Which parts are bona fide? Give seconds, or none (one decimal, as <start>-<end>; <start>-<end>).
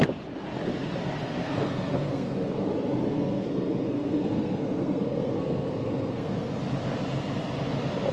0.0-1.4; 2.5-3.0; 6.6-8.1